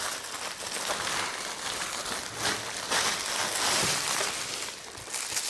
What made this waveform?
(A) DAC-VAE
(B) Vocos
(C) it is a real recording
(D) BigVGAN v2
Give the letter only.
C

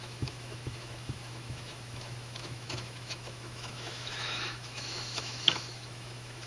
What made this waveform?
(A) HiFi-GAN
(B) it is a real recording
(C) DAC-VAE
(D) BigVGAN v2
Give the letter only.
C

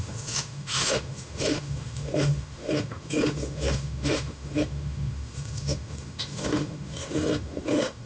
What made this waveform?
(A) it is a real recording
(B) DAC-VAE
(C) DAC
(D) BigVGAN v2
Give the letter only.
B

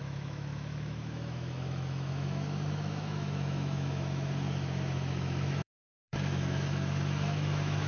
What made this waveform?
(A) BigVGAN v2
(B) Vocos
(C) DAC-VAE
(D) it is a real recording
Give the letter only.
C